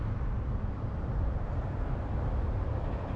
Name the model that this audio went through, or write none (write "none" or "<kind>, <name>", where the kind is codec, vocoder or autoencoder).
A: none